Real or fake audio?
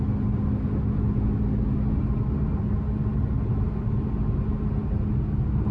real